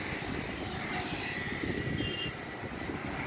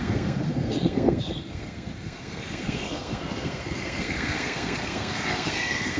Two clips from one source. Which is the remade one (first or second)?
second